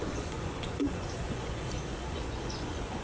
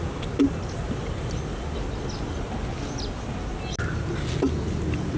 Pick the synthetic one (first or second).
first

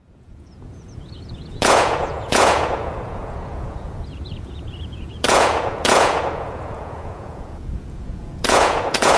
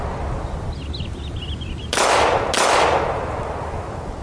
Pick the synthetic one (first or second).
first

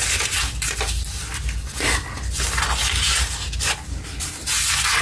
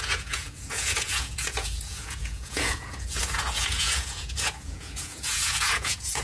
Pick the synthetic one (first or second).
second